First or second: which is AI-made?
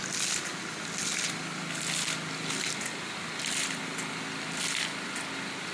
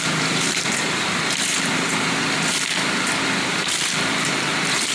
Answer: second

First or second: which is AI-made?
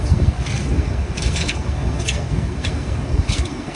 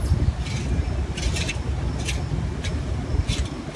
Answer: first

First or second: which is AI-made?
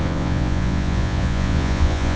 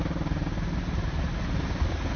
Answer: first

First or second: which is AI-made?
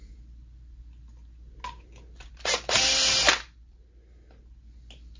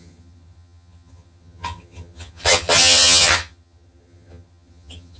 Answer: second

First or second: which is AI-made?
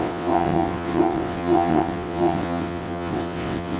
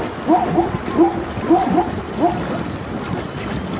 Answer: first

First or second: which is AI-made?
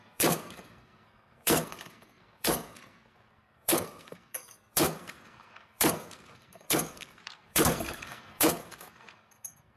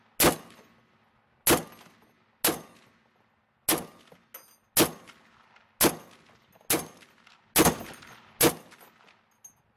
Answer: first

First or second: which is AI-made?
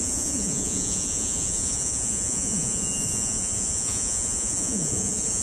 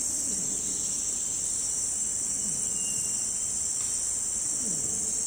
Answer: first